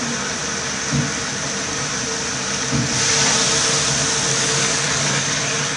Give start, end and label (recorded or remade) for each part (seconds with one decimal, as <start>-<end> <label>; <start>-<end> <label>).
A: 0.0-4.3 recorded; 4.3-5.3 remade; 5.3-5.8 recorded